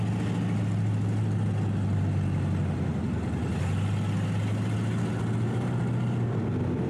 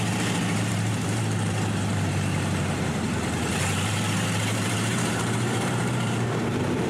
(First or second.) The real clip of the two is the first